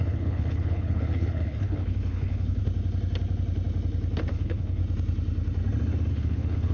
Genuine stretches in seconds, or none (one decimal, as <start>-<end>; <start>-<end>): 2.6-4.3; 4.8-6.1